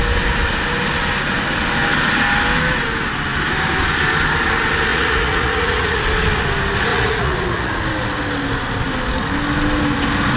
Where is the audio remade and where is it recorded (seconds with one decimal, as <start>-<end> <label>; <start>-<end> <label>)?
0.0-4.9 recorded; 4.9-6.0 remade; 6.0-6.9 recorded; 6.9-7.8 remade; 7.8-10.4 recorded

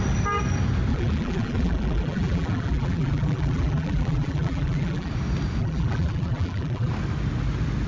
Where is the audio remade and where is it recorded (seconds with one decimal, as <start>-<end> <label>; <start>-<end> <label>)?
0.0-0.9 recorded; 0.9-5.1 remade; 5.1-5.6 recorded; 5.6-6.9 remade; 6.9-7.9 recorded

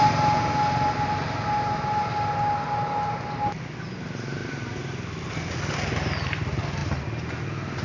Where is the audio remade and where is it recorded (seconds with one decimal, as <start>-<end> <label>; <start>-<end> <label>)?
0.0-7.8 recorded

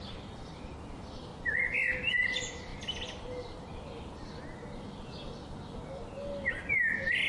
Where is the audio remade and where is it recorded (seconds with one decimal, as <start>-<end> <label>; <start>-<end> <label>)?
0.0-7.3 recorded

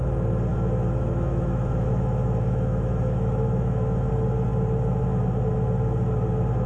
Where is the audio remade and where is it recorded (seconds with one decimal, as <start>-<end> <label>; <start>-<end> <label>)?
0.0-0.5 recorded; 0.5-4.1 remade; 4.1-6.7 recorded

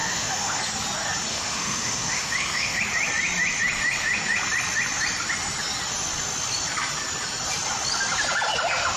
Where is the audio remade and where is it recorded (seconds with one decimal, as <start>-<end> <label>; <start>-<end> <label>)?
0.0-0.6 remade; 0.6-1.3 recorded; 1.3-2.8 remade; 2.8-9.0 recorded

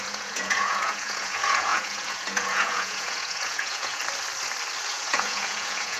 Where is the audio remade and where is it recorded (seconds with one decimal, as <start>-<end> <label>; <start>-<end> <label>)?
0.0-4.0 remade; 4.0-4.9 recorded; 4.9-6.0 remade

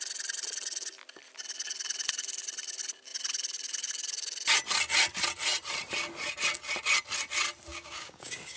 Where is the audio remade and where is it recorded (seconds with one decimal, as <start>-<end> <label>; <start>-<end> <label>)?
0.0-7.7 recorded; 7.7-8.6 remade